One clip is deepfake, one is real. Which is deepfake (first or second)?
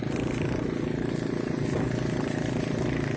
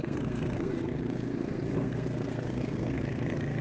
second